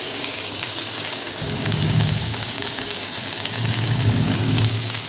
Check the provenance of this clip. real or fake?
fake